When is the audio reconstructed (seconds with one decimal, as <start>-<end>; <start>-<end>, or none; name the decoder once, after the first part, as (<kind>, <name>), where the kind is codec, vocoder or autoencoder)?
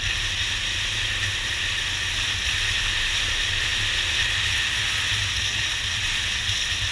none